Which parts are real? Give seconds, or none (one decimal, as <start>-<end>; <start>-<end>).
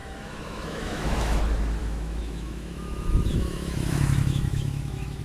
1.4-1.8